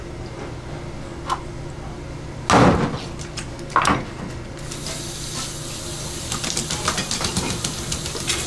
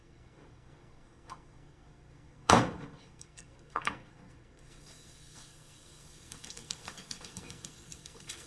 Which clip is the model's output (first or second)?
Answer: second